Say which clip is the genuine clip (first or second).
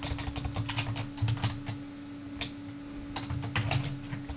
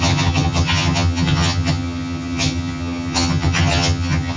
first